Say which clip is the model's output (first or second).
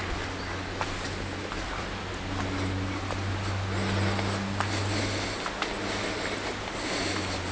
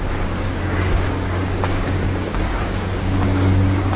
second